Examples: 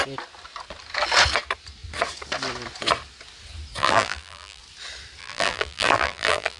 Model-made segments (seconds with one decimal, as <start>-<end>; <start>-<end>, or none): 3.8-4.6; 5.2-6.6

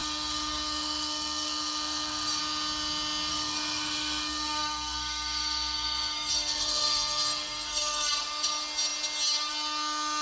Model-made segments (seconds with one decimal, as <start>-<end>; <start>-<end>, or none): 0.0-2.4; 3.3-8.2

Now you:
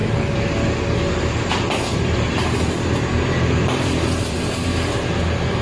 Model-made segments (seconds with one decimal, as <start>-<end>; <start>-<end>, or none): 1.5-5.6

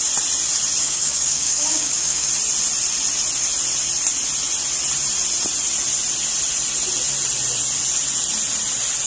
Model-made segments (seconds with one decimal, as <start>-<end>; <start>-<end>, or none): 0.8-2.3

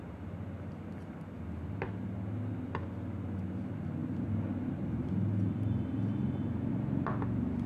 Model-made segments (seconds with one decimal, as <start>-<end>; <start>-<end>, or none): none